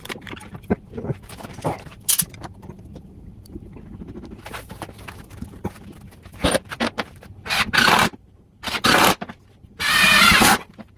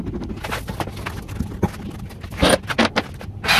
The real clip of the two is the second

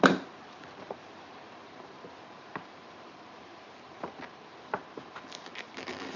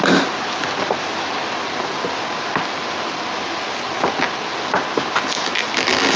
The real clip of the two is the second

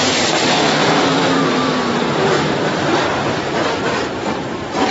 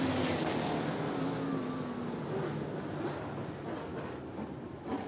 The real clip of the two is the second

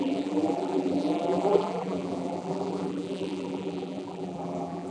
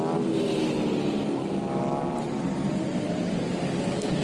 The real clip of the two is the second